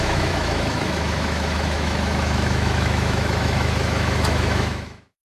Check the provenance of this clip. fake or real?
fake